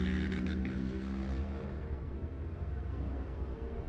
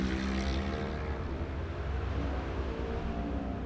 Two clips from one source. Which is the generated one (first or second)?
first